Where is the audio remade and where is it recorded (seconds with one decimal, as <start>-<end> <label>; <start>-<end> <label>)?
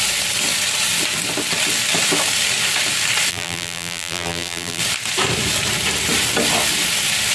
0.0-3.3 recorded; 3.3-4.8 remade; 4.8-7.3 recorded